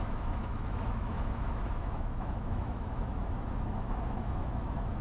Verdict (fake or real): fake